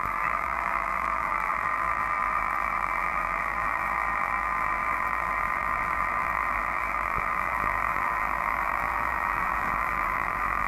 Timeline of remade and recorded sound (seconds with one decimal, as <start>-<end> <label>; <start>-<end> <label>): 0.0-10.7 remade